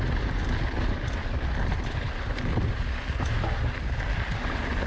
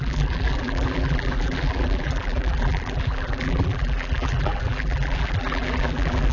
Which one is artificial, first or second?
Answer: second